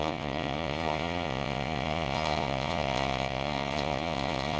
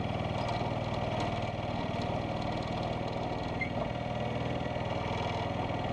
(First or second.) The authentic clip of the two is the second